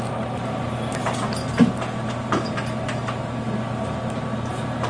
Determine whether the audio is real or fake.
real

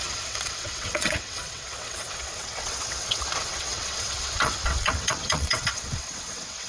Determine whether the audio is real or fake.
fake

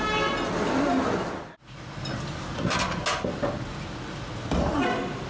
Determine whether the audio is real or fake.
real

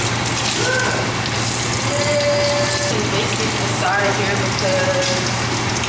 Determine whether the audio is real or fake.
real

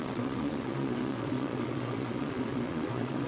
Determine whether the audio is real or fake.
fake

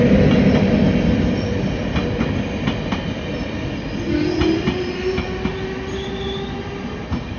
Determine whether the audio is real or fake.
real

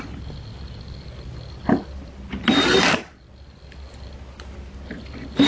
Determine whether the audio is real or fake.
real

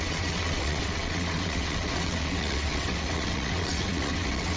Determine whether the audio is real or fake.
fake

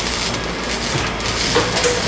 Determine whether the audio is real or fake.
real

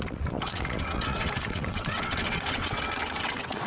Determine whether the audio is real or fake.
fake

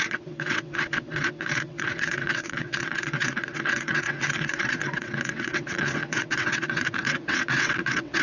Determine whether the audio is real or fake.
fake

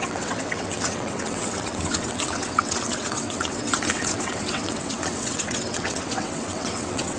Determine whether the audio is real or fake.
fake